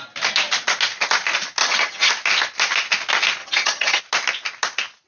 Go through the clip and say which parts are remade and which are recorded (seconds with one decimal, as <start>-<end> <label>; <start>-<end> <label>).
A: 0.0-1.6 recorded; 1.6-2.1 remade; 2.1-3.4 recorded; 3.4-4.0 remade; 4.0-5.1 recorded